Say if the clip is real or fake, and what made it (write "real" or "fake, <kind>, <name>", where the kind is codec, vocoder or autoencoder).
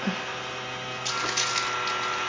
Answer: real